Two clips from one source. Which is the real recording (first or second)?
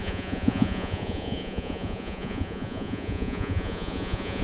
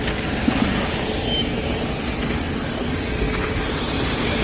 second